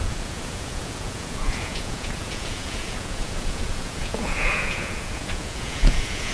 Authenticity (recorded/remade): remade